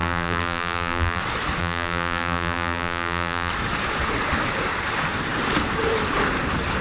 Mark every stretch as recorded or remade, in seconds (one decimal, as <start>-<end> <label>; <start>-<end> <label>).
0.0-1.2 remade; 1.2-1.6 recorded; 1.6-3.5 remade; 3.5-6.8 recorded